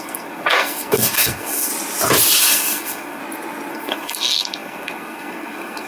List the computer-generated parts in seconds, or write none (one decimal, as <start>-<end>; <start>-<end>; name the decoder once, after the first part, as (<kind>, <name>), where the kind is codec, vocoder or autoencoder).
0.0-1.7 (codec, SNAC); 2.4-3.2; 3.7-5.9